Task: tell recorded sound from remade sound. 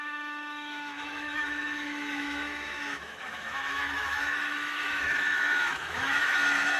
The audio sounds remade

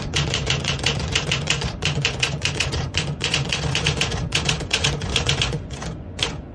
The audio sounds remade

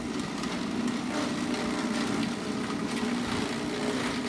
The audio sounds recorded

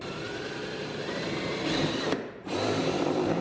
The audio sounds remade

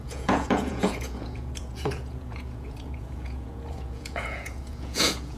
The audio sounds remade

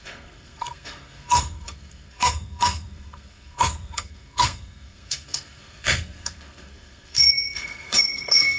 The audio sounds remade